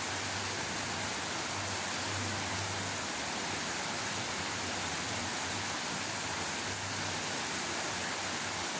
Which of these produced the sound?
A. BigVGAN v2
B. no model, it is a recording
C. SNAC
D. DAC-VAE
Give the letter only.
B